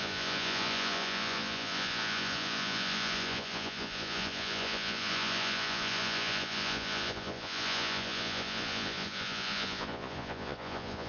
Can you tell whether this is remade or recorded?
remade